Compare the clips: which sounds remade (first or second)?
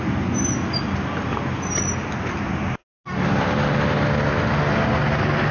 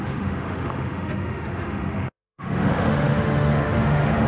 second